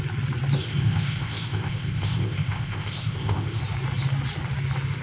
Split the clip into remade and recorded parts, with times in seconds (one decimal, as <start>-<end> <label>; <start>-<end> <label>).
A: 0.0-0.6 recorded; 0.6-3.6 remade; 3.6-5.0 recorded